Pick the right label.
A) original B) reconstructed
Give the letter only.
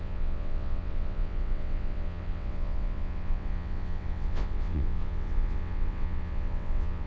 B